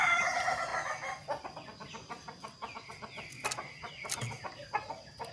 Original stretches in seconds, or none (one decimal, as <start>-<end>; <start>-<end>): 0.0-5.3